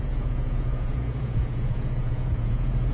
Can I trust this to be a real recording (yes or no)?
no